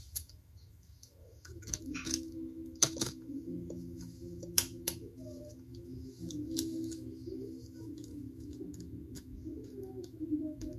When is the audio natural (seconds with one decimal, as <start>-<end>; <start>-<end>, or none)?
none